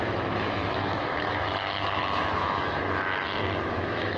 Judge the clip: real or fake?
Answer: fake